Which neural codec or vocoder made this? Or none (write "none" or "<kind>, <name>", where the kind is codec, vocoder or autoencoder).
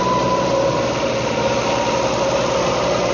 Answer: none